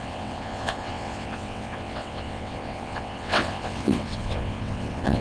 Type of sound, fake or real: fake